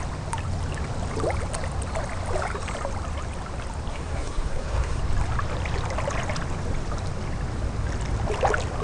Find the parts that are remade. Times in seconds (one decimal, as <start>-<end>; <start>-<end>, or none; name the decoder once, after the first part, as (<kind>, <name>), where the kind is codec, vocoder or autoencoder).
3.9-5.0 (codec, SNAC)